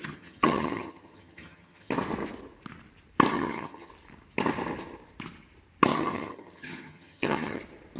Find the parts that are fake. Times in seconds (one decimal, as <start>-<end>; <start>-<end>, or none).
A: 0.0-1.9; 3.3-3.9; 5.9-7.6